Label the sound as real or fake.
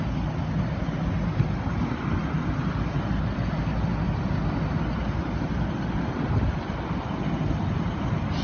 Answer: real